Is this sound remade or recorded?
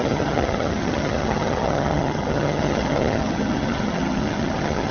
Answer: remade